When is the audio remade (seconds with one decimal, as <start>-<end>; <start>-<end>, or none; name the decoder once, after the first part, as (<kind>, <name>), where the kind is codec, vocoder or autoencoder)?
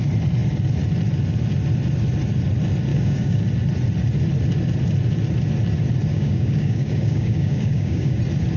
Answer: 2.9-3.4 (codec, DAC); 6.1-8.2